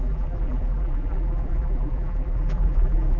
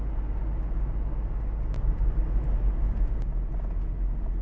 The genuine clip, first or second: second